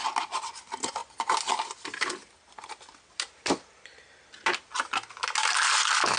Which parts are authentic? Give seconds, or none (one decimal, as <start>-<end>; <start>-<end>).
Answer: 0.0-6.2